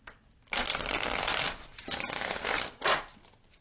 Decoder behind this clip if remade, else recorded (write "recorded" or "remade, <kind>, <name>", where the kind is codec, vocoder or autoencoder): recorded